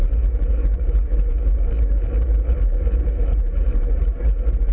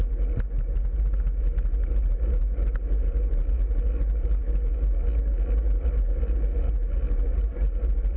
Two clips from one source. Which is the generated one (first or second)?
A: first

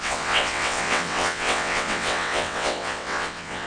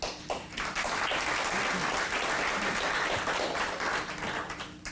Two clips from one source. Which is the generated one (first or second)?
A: first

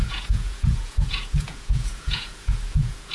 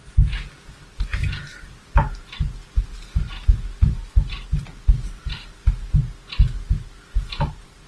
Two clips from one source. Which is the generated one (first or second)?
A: first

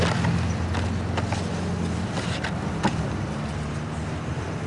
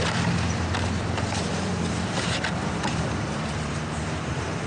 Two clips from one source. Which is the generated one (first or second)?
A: second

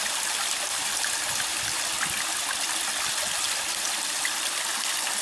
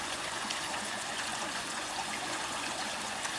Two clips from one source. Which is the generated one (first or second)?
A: second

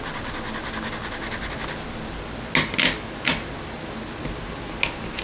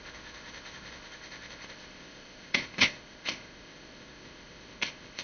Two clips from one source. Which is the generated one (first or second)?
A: second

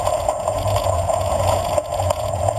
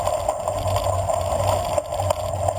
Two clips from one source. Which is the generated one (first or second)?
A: first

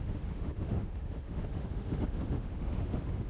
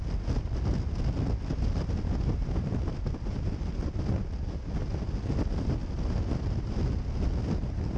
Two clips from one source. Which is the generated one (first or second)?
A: first